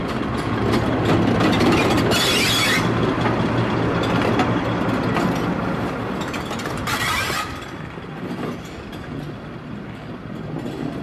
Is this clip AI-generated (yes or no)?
no